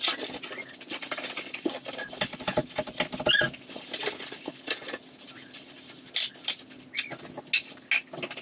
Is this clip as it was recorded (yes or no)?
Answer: yes